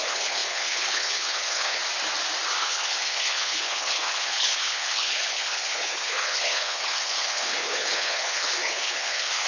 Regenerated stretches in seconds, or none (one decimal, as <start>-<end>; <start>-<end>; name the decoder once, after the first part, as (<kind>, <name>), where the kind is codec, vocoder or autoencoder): 0.0-1.8 (codec, HILCodec); 2.6-9.5